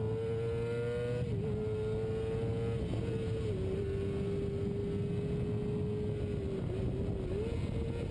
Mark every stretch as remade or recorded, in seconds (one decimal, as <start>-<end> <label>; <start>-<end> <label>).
0.0-8.1 recorded